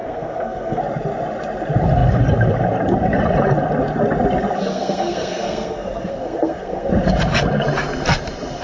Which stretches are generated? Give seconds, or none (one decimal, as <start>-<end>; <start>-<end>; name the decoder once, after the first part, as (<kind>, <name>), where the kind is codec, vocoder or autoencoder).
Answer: 0.0-0.8 (codec, SNAC); 4.7-6.9